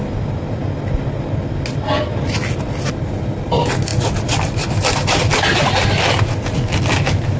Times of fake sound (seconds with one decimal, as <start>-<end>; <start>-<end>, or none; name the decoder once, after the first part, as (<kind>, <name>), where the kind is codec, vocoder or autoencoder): none